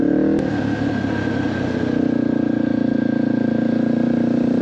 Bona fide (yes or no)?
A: yes